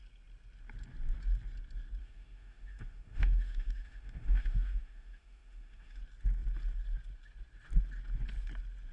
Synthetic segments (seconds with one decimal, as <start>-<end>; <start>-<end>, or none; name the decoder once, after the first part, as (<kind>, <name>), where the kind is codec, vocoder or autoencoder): 2.0-6.0 (autoencoder, DAC-VAE)

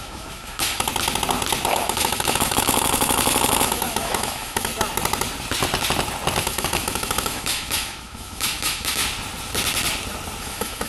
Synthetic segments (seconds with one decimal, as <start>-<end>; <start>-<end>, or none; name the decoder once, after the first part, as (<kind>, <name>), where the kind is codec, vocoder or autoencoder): 0.0-0.9 (autoencoder, DAC-VAE); 1.7-4.7; 6.4-9.0; 10.4-10.9